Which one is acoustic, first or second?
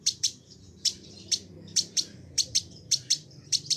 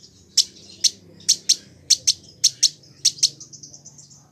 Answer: second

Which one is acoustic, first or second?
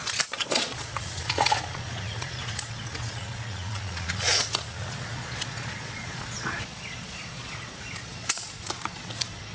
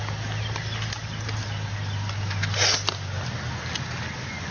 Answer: second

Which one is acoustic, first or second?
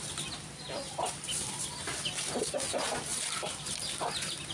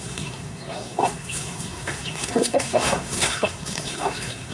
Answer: first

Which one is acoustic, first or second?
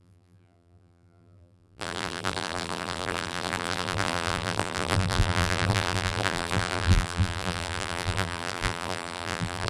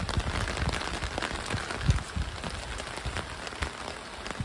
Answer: second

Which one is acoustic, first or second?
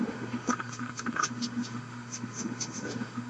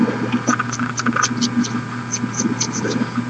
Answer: second